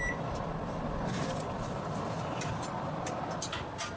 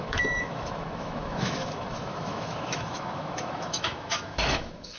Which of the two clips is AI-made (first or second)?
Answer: second